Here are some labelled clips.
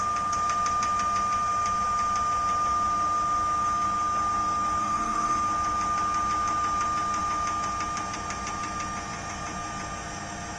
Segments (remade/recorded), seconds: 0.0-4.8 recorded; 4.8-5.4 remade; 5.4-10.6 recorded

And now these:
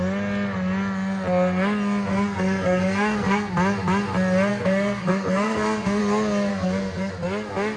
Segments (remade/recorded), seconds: 0.0-2.1 recorded; 2.1-3.5 remade; 3.5-4.5 recorded; 4.5-6.0 remade; 6.0-6.5 recorded; 6.5-7.1 remade; 7.1-7.8 recorded

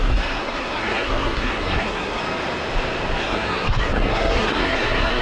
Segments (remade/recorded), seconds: 0.0-2.2 remade; 2.2-3.2 recorded; 3.2-5.2 remade